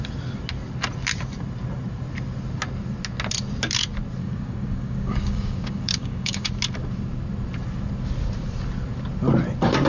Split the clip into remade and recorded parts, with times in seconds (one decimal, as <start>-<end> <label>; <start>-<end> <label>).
0.0-4.2 recorded; 4.2-6.5 remade; 6.5-9.9 recorded